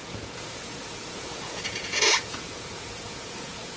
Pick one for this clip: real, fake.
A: fake